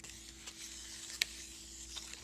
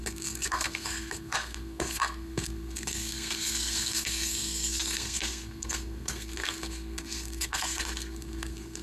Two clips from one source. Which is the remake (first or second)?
second